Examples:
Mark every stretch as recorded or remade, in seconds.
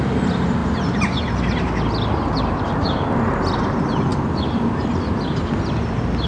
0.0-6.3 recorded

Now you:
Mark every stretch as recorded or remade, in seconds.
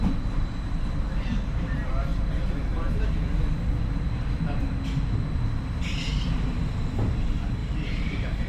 0.0-7.6 recorded; 7.6-8.5 remade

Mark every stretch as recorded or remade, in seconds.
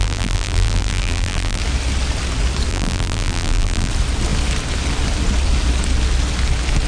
0.0-1.6 remade; 1.6-2.7 recorded; 2.7-3.9 remade; 3.9-6.9 recorded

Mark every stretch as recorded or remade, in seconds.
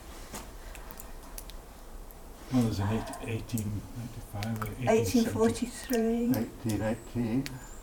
0.0-7.8 remade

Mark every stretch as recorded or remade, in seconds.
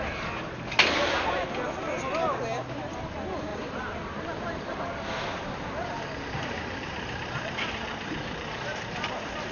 0.0-3.5 recorded; 3.5-4.8 remade; 4.8-5.8 recorded; 5.8-9.5 remade